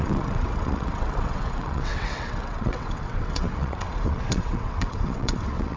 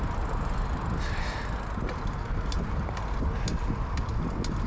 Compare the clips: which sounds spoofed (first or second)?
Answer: first